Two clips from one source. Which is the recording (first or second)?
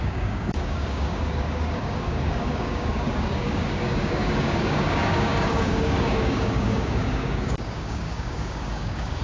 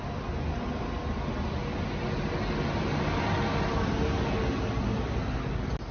second